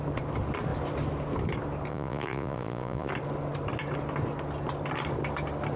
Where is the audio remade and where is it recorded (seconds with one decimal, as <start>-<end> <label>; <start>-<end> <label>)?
0.0-1.9 recorded; 1.9-3.1 remade; 3.1-5.8 recorded